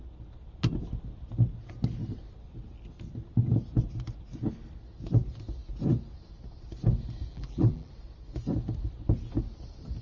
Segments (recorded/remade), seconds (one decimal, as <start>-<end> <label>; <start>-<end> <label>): 0.0-7.3 recorded; 7.3-7.9 remade; 7.9-10.0 recorded